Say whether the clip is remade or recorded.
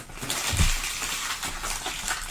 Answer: recorded